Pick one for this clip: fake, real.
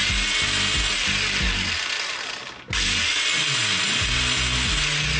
real